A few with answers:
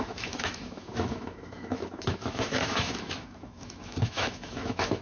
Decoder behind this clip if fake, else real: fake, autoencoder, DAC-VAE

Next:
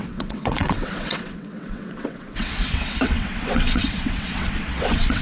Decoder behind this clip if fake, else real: fake, vocoder, WaveNeXt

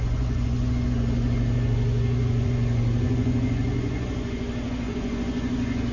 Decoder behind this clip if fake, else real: fake, vocoder, Vocos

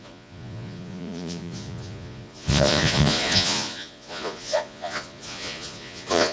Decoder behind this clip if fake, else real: fake, vocoder, Vocos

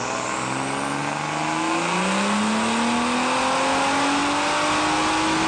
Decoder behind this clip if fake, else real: real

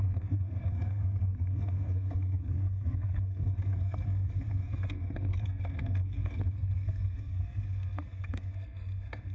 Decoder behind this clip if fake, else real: fake, codec, SNAC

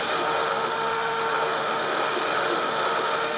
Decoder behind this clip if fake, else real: fake, autoencoder, DAC-VAE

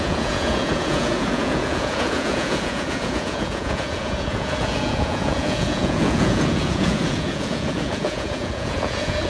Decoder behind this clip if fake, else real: fake, vocoder, Vocos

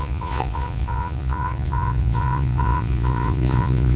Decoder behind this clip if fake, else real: fake, vocoder, Vocos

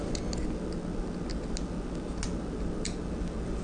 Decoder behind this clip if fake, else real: real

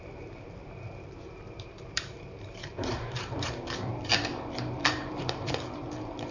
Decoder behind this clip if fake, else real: fake, vocoder, BigVGAN v2